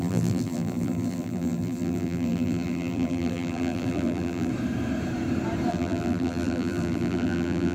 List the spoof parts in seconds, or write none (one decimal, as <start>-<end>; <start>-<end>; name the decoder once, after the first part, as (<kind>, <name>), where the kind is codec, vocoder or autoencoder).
0.0-4.5 (vocoder, BigVGAN v2); 5.7-7.7